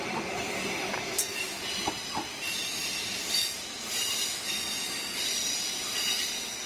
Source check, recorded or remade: recorded